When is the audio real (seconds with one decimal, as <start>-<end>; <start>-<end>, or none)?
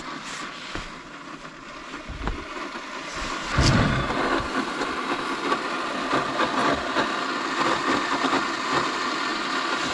0.0-3.1; 3.9-9.9